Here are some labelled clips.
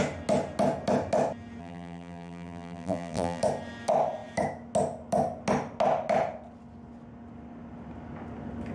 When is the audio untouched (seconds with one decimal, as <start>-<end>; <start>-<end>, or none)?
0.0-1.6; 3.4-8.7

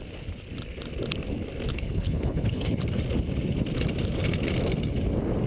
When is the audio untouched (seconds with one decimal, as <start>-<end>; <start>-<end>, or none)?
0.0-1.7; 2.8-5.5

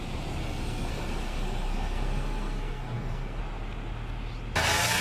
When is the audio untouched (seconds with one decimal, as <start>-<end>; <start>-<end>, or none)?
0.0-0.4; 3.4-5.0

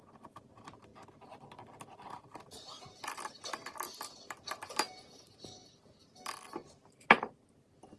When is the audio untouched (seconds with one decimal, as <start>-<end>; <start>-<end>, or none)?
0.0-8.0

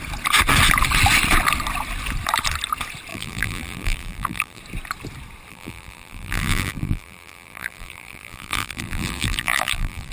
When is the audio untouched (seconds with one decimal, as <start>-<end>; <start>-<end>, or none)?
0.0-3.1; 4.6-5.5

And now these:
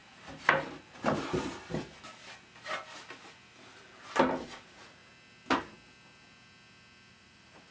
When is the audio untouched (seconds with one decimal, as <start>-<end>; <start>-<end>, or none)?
0.0-4.4; 5.0-7.1